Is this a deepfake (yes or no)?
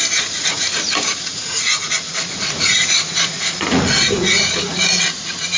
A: yes